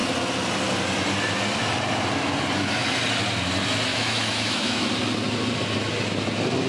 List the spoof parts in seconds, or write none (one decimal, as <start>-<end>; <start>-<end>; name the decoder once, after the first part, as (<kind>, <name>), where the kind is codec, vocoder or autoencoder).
3.9-4.9 (autoencoder, DAC-VAE)

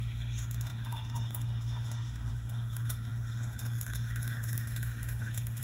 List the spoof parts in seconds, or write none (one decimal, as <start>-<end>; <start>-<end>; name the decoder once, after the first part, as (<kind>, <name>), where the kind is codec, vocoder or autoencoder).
0.0-5.6 (autoencoder, DAC-VAE)

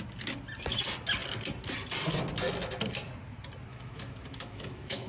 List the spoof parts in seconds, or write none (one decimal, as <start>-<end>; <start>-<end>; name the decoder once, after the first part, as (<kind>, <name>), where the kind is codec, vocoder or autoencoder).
3.7-5.1 (autoencoder, DAC-VAE)

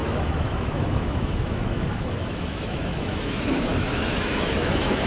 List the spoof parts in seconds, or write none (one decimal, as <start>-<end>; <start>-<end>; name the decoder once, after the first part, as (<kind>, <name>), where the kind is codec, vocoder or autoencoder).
0.0-5.1 (autoencoder, DAC-VAE)

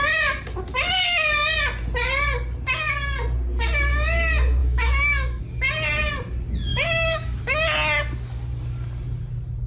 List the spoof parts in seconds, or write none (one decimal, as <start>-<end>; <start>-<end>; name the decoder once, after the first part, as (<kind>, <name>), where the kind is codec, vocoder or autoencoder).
4.6-5.4 (autoencoder, DAC-VAE); 6.7-7.6

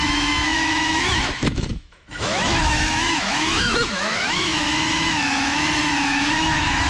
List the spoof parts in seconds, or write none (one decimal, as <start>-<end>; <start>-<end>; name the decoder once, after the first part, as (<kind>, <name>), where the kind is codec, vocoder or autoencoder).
0.0-6.9 (autoencoder, DAC-VAE)

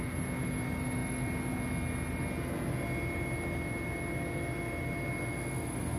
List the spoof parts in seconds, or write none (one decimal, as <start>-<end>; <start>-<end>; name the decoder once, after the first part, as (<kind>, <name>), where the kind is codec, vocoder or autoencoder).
none